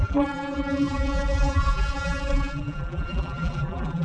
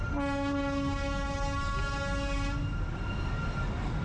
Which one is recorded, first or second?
second